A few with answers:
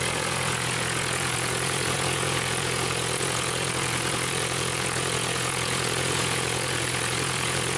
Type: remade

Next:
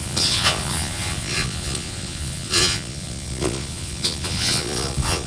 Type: remade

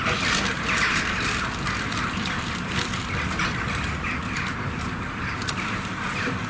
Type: recorded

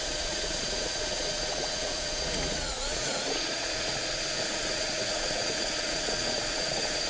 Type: remade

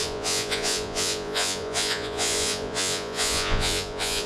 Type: remade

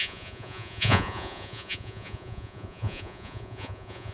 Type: remade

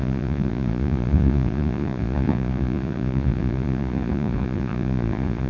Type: remade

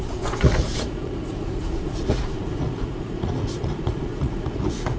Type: remade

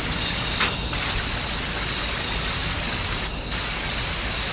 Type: recorded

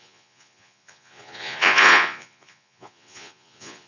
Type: remade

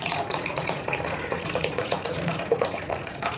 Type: remade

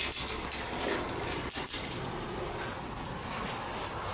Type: recorded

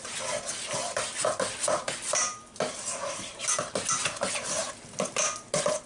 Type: recorded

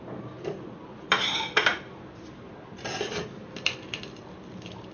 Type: recorded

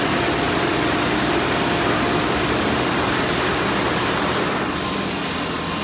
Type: recorded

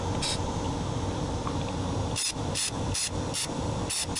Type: recorded